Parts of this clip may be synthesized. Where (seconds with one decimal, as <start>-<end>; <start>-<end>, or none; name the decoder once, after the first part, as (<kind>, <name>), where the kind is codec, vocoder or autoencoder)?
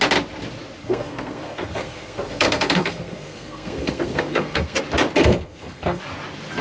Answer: 0.8-4.8 (codec, SNAC); 5.2-6.0